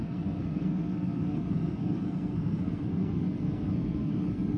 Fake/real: fake